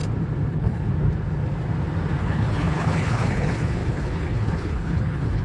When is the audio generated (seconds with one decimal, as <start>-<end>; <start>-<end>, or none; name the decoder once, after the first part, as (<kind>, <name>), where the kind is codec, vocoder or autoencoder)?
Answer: 0.5-0.9 (codec, HILCodec); 2.2-5.4